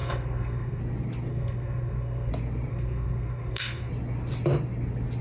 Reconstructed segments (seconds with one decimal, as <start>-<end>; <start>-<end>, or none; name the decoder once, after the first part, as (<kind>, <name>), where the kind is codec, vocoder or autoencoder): 0.0-0.8 (codec, SNAC); 1.3-2.3; 2.7-3.9